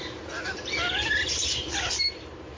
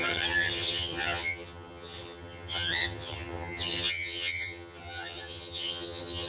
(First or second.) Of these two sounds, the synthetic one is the second